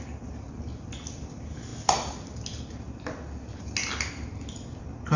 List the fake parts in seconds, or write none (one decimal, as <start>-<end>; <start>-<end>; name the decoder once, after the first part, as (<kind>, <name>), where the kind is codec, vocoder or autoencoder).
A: none